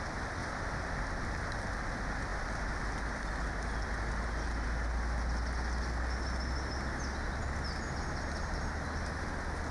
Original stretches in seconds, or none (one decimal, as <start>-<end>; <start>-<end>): 0.0-0.4; 1.8-2.3; 2.8-9.7